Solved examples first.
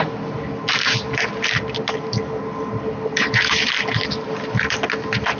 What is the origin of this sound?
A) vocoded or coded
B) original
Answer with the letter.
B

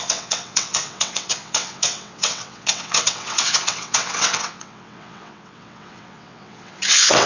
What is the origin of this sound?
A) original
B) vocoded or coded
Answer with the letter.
B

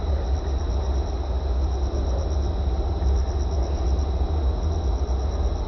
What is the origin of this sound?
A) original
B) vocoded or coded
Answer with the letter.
A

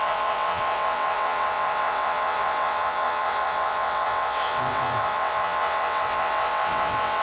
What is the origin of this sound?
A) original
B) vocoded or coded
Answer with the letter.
B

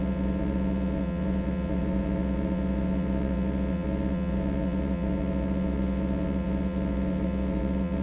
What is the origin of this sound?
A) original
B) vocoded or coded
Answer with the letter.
B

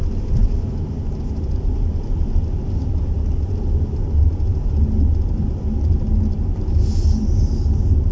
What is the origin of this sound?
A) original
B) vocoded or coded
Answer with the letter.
A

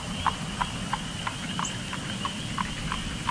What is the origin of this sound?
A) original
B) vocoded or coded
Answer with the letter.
A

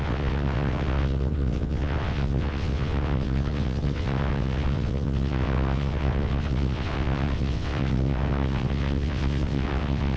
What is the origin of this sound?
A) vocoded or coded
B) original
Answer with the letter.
A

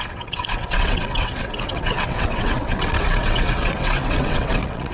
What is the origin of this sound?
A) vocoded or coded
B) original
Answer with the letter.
A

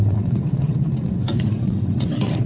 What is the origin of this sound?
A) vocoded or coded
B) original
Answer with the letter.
A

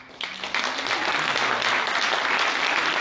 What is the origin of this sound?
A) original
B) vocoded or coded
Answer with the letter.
A